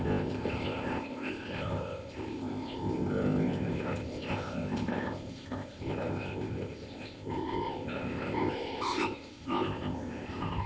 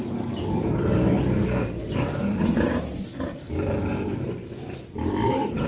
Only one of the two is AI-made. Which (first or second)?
first